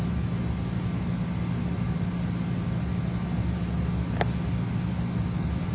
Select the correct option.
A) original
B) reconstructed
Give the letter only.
A